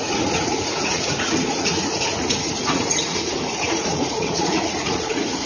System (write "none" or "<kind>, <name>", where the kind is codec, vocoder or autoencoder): vocoder, Vocos